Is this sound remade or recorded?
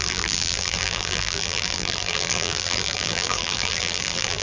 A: remade